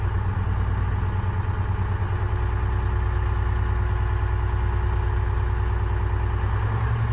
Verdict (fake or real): real